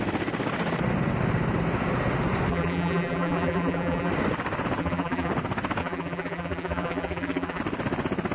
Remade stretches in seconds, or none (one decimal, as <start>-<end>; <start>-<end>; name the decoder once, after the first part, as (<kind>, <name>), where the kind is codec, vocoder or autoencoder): 2.5-4.1 (vocoder, BigVGAN v2); 4.8-5.3; 5.8-7.6